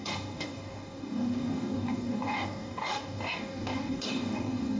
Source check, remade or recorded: remade